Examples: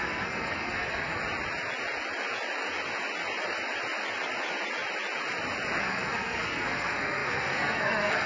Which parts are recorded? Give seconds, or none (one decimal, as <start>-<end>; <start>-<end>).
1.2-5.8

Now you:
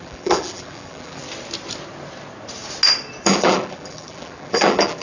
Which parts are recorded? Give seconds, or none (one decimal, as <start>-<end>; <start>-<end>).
1.2-3.2

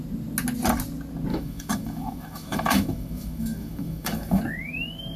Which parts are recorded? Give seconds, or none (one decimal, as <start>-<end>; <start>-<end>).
0.0-1.3; 4.4-5.2

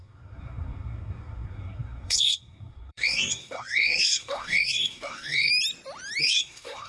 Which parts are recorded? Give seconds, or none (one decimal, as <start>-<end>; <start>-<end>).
5.5-6.2

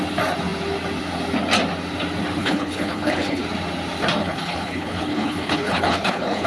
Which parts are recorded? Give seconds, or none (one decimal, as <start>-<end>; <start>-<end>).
0.0-2.4; 3.4-4.2

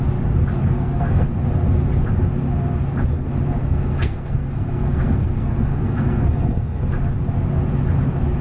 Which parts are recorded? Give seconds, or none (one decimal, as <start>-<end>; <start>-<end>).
0.0-0.6; 1.3-3.6; 6.8-8.4

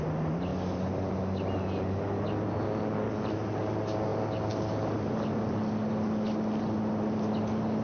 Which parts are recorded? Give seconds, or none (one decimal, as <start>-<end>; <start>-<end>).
0.0-7.8